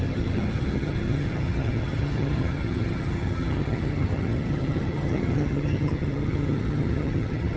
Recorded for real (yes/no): no